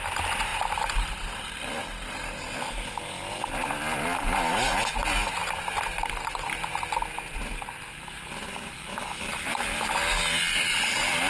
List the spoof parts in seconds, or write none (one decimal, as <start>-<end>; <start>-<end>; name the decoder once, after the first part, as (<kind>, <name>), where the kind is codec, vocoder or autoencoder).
none